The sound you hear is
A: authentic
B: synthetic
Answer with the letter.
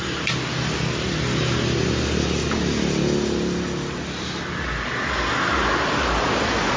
A